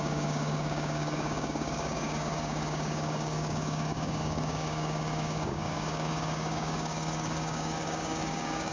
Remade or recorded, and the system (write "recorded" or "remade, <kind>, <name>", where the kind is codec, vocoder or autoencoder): remade, codec, DAC